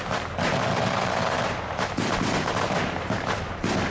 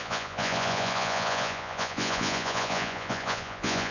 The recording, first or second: first